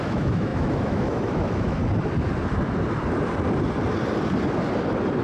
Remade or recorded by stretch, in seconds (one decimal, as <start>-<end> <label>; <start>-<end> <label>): 0.0-1.8 remade; 1.8-5.2 recorded